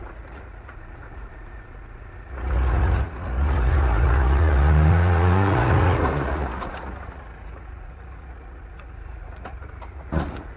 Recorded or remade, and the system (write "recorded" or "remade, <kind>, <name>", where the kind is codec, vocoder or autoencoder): remade, vocoder, Vocos